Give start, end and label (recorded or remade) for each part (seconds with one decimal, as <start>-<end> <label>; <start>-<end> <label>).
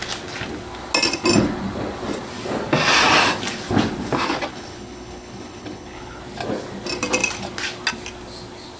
0.0-4.5 recorded; 4.5-6.2 remade; 6.2-8.8 recorded